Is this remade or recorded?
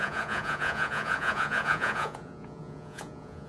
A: remade